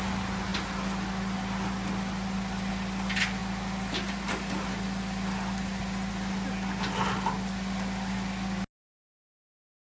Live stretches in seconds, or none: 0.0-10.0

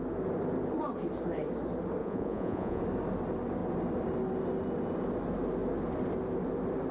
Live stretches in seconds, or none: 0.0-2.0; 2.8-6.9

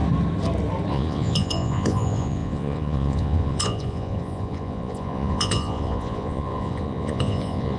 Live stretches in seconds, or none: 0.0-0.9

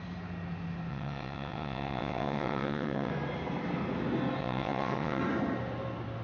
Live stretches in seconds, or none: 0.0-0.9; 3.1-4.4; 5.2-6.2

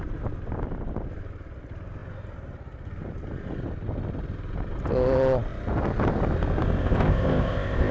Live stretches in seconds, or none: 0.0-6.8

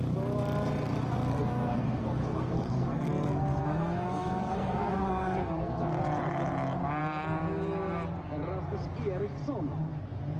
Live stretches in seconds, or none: 0.0-1.3; 6.0-10.4